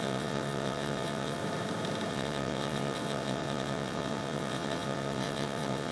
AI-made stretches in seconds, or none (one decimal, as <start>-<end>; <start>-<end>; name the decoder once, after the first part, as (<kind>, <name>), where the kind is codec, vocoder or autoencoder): 0.0-1.4 (vocoder, WaveNeXt); 2.1-5.9